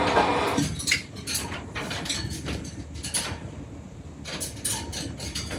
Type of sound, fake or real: real